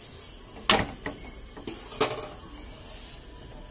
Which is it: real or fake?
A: real